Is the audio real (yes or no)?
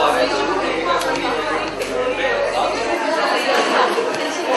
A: yes